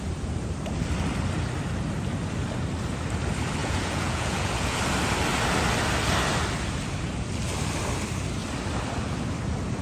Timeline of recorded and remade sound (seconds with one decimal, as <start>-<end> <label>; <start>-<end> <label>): 0.0-3.6 recorded; 3.6-4.8 remade; 4.8-9.8 recorded